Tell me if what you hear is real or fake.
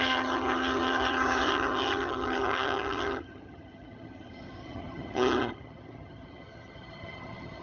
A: fake